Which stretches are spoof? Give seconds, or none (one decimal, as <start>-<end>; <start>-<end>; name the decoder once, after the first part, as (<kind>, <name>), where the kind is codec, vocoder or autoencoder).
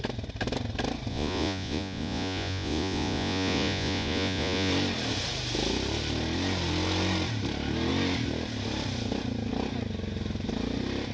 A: 1.1-4.7 (vocoder, Vocos)